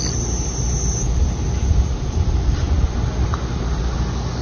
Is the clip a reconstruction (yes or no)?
no